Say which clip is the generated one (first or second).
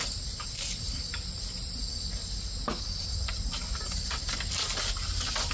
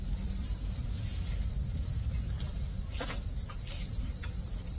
second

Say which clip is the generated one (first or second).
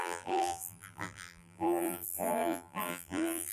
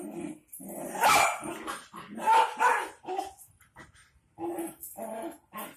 first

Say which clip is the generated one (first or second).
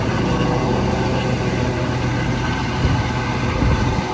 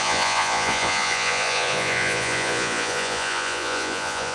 second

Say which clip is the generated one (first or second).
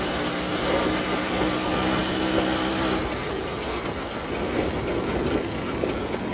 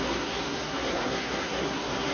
second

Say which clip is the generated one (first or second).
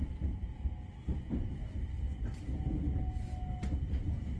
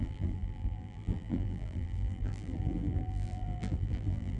second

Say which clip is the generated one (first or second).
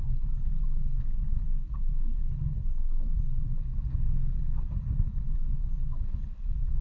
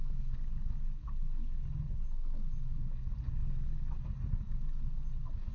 first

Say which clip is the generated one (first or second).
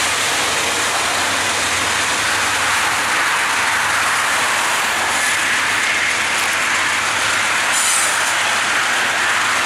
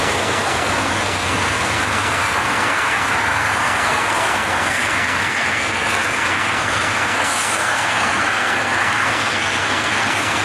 second